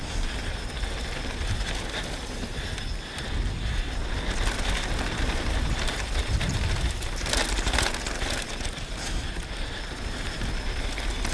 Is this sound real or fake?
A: real